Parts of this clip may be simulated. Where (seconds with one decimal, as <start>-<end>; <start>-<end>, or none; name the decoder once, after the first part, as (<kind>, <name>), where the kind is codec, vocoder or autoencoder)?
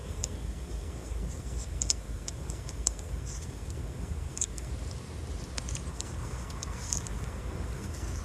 0.0-4.7 (codec, SNAC); 5.9-8.2